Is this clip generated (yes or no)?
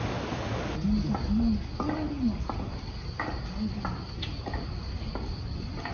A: no